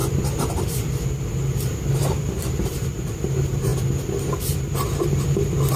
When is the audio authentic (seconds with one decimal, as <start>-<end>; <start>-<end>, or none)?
0.0-1.7; 2.7-5.8